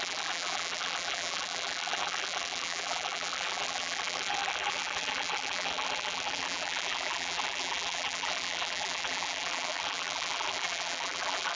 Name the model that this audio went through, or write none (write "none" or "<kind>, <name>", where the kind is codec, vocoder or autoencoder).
vocoder, BigVGAN v2